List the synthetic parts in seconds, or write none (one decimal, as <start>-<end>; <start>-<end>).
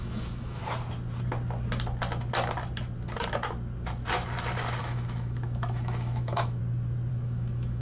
0.0-0.6; 4.8-6.6; 7.1-7.8